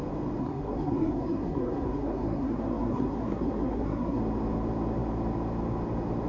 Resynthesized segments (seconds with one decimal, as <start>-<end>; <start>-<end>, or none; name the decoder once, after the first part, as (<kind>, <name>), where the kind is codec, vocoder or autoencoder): 0.4-4.2 (codec, SNAC)